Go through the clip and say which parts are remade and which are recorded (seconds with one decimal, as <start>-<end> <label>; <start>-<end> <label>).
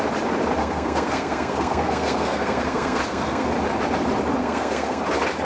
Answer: 0.0-0.6 recorded; 0.6-3.5 remade; 3.5-4.4 recorded; 4.4-5.0 remade; 5.0-5.4 recorded